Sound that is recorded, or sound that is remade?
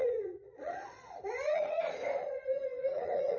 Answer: remade